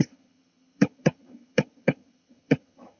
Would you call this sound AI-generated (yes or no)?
yes